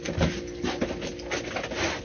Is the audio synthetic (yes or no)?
no